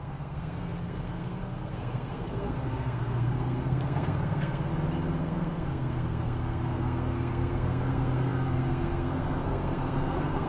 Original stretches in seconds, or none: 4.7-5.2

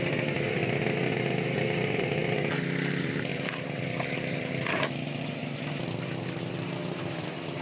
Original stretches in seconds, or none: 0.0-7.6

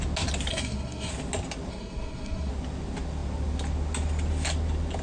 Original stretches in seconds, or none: 0.0-0.5; 1.1-1.7; 2.5-5.0

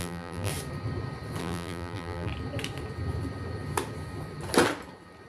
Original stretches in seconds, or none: 0.5-1.4; 2.3-5.3